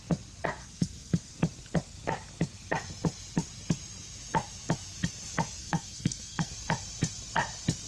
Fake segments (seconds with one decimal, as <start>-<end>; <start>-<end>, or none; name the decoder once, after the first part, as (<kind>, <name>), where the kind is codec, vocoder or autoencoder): 0.6-1.3 (codec, SNAC); 5.6-6.5